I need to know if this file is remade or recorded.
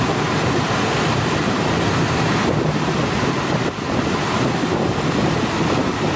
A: remade